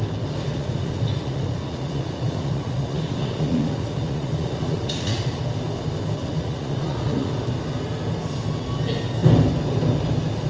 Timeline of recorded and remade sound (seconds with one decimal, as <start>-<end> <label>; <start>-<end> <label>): 0.0-0.5 recorded; 0.5-5.4 remade; 5.4-6.2 recorded; 6.2-7.3 remade; 7.3-10.5 recorded